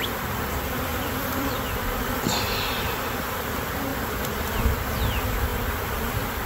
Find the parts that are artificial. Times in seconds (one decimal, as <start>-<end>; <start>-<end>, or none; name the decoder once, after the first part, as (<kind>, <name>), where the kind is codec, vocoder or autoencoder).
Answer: 0.9-2.8 (vocoder, BigVGAN v2); 3.9-4.9